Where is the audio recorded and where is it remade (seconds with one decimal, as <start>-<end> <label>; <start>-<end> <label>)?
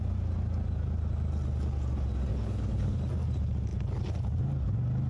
0.0-2.3 recorded; 2.3-3.0 remade; 3.0-5.1 recorded